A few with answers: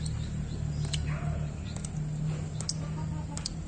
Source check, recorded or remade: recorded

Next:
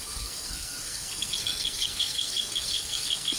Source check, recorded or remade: remade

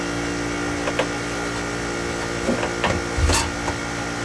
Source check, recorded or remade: recorded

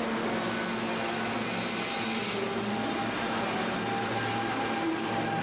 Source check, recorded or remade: recorded